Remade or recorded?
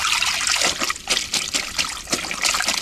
recorded